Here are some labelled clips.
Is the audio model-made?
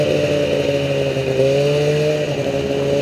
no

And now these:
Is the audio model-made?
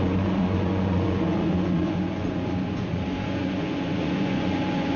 yes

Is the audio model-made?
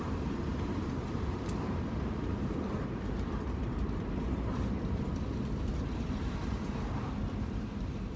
yes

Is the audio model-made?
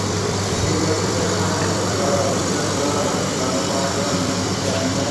yes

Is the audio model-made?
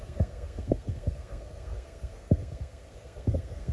yes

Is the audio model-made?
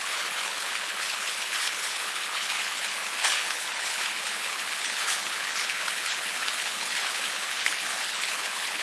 yes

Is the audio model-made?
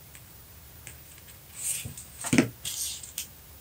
yes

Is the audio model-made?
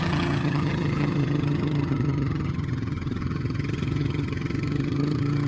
yes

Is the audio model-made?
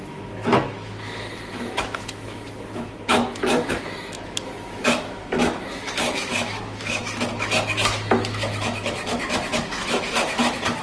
yes